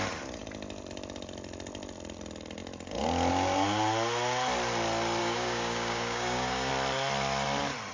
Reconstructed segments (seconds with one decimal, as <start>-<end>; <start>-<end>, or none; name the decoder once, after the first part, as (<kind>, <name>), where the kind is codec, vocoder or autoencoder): 5.2-6.7 (codec, DAC)